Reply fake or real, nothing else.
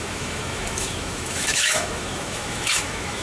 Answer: fake